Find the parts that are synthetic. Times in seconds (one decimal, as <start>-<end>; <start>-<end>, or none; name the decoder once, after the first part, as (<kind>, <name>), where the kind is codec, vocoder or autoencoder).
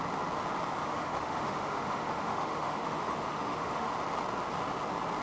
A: 0.8-3.9 (autoencoder, DAC-VAE)